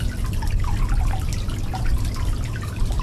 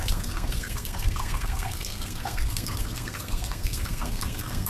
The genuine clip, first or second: first